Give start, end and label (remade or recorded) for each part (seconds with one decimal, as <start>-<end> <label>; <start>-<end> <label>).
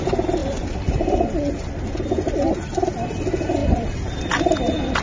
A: 0.0-0.4 recorded; 0.4-1.3 remade; 1.3-3.6 recorded; 3.6-4.2 remade; 4.2-5.0 recorded